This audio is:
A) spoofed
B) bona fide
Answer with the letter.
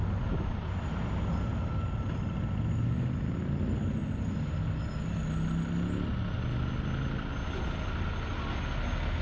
B